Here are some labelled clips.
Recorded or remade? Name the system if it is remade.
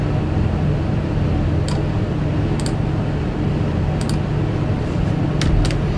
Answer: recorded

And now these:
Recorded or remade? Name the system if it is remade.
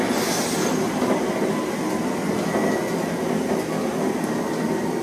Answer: recorded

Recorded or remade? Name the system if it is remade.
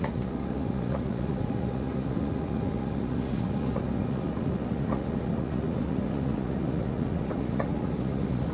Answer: remade, vocoder, Vocos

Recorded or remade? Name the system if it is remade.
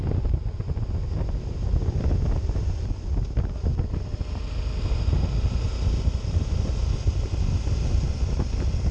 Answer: recorded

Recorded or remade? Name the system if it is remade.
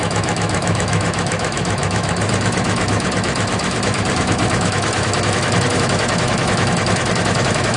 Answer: remade, autoencoder, DAC-VAE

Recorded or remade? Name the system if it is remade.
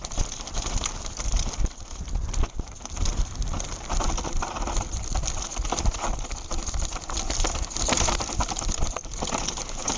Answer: recorded